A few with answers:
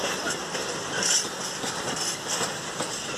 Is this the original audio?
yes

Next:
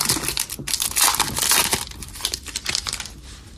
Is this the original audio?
no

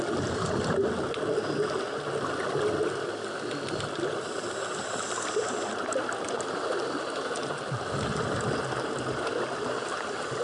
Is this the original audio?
yes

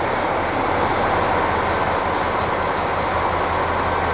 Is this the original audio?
yes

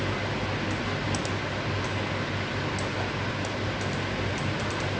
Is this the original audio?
yes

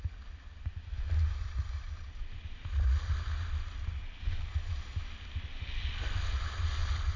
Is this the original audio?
yes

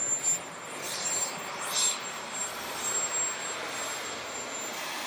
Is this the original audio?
yes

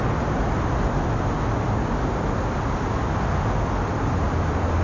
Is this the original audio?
yes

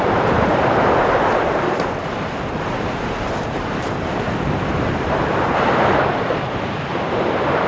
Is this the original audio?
no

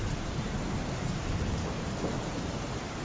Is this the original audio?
no